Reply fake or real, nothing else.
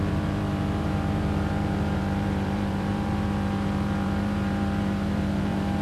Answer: fake